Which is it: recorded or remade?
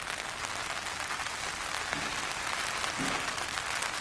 recorded